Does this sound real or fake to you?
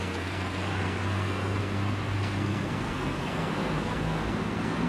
fake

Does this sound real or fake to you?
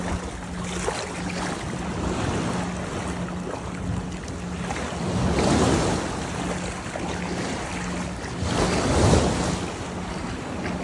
real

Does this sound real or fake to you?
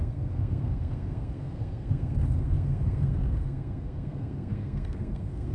fake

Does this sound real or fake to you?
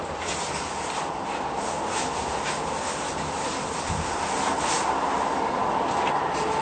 real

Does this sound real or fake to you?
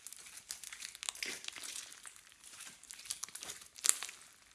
real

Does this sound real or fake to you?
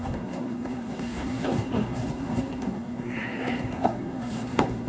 fake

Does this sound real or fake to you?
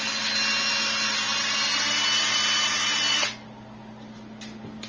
real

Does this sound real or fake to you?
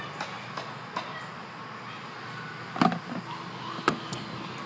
real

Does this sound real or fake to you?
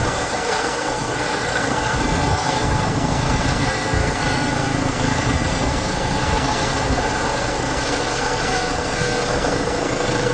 fake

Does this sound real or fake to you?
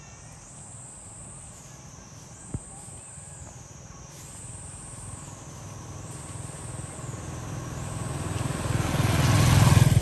real